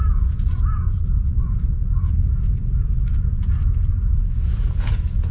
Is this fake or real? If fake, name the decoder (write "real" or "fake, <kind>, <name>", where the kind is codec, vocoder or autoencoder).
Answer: fake, vocoder, Vocos